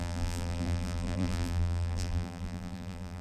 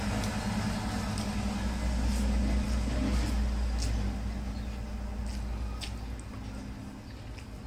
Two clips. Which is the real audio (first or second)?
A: second